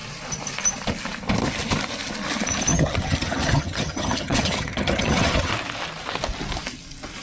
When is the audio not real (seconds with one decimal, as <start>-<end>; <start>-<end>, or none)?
2.7-5.5